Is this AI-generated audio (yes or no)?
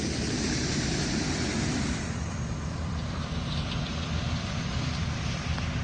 no